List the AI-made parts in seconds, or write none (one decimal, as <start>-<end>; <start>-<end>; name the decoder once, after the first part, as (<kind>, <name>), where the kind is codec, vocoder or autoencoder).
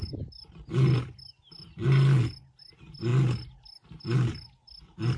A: none